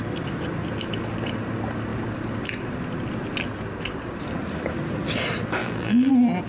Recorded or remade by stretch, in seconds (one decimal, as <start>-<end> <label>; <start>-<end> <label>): 0.0-5.6 recorded; 5.6-6.1 remade; 6.1-6.5 recorded